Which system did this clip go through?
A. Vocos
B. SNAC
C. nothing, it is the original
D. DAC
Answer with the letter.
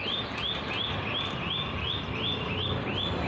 C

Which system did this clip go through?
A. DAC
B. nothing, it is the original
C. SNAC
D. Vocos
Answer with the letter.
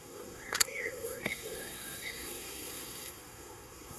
C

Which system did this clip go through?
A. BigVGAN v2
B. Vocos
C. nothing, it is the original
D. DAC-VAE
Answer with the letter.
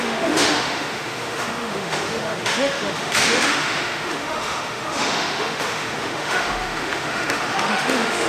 D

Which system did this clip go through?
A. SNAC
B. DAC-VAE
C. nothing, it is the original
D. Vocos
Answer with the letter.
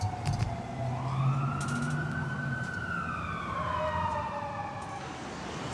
C